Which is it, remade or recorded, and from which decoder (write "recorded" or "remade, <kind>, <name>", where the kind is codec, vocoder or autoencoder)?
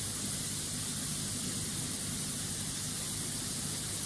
recorded